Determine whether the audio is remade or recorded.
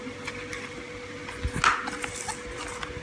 recorded